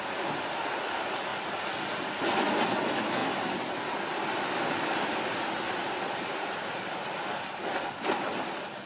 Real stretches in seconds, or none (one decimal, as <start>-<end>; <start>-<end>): 0.0-8.9